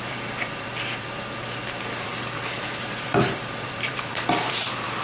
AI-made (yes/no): yes